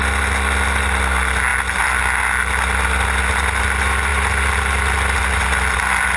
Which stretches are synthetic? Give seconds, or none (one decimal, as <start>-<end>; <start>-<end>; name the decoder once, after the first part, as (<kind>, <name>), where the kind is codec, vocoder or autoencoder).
none